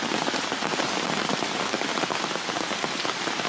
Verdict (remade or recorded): recorded